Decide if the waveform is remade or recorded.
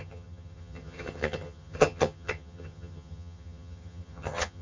remade